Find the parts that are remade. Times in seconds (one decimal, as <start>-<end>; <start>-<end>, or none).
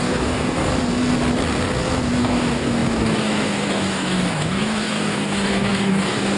0.0-0.7; 2.2-6.4